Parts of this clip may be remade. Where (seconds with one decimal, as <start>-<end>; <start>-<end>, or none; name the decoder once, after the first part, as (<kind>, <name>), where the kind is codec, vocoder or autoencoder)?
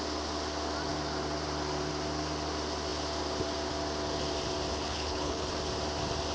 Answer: 4.7-5.5 (codec, HILCodec)